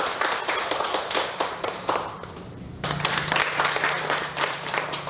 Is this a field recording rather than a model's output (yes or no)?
no